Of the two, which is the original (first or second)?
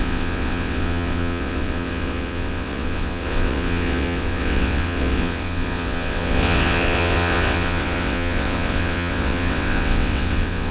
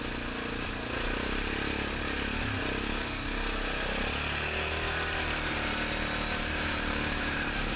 second